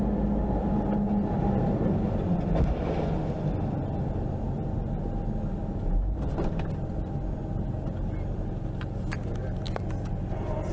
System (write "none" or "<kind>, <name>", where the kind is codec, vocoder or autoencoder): none